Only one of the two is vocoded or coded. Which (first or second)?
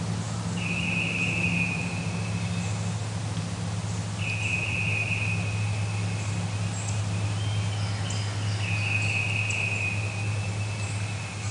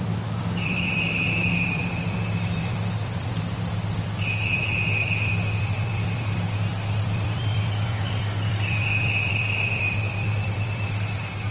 second